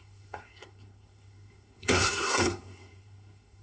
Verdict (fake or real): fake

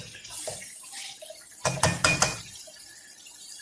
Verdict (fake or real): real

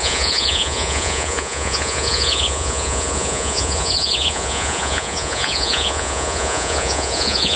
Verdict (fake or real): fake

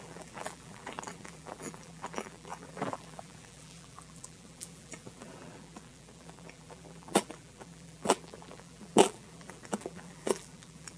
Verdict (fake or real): fake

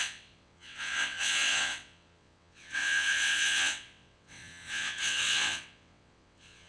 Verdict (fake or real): fake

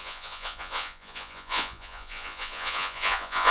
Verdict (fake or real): fake